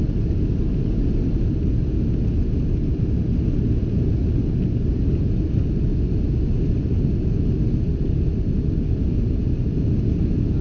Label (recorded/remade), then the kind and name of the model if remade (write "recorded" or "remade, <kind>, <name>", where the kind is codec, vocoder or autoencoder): recorded